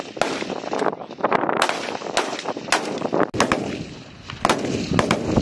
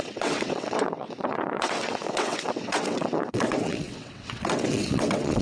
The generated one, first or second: second